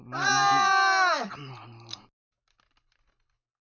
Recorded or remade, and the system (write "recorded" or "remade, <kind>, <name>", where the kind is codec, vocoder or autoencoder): recorded